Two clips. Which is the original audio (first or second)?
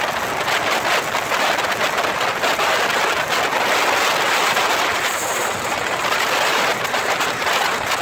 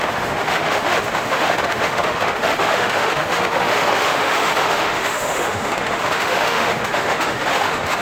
first